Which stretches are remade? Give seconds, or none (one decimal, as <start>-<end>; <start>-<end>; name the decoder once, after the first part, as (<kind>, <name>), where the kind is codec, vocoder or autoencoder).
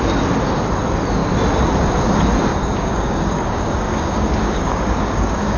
2.5-5.6 (codec, DAC)